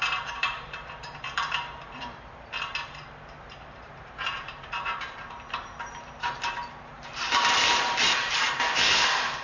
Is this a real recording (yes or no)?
no